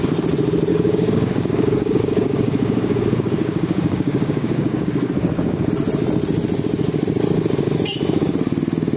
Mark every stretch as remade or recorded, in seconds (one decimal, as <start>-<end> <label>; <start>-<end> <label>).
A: 0.0-0.7 recorded; 0.7-5.7 remade; 5.7-9.0 recorded

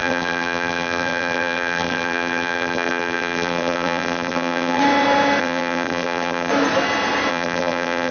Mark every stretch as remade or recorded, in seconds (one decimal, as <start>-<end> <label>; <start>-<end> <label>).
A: 0.0-4.8 remade; 4.8-5.4 recorded; 5.4-6.5 remade; 6.5-7.3 recorded; 7.3-8.1 remade

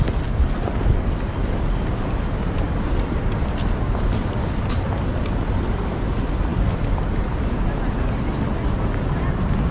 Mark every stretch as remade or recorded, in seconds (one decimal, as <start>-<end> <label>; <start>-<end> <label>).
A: 0.0-9.7 recorded

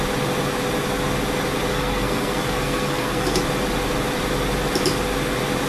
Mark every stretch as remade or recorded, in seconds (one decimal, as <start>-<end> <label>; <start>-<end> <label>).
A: 0.0-1.7 recorded; 1.7-3.4 remade; 3.4-5.7 recorded

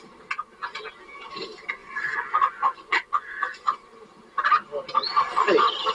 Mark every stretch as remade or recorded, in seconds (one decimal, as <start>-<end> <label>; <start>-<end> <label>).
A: 0.0-1.8 recorded; 1.8-3.8 remade; 3.8-5.9 recorded

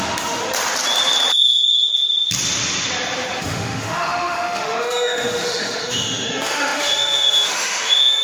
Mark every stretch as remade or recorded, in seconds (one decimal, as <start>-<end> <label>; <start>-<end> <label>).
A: 0.0-0.4 remade; 0.4-3.4 recorded; 3.4-8.2 remade